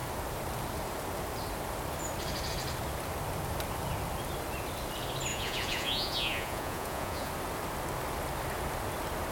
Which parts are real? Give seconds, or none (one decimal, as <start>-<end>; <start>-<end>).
0.0-5.3; 7.3-9.3